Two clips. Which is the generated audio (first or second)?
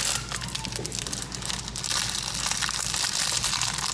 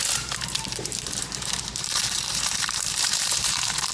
second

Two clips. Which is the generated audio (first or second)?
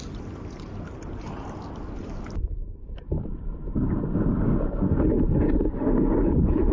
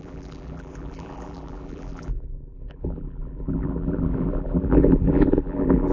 second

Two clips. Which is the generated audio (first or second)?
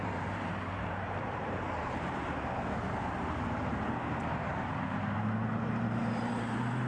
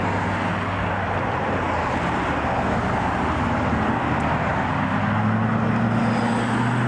first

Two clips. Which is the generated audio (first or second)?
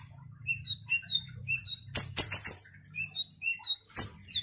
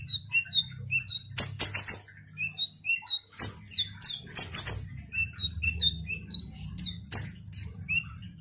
first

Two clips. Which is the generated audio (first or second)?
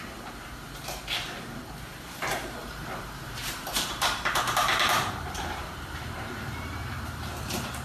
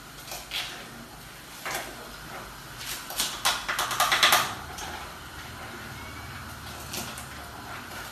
first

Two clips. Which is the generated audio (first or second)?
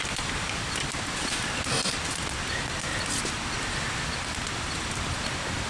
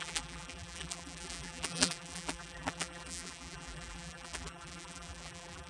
second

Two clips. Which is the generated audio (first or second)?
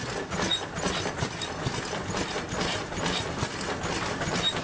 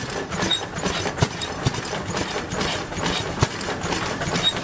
second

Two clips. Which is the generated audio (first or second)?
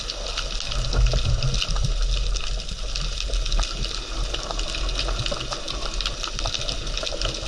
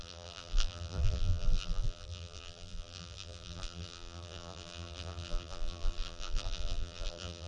second